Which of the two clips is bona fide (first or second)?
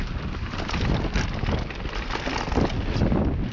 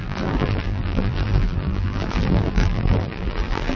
first